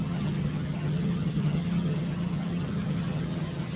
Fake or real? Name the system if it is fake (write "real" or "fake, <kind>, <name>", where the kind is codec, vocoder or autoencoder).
fake, vocoder, HiFi-GAN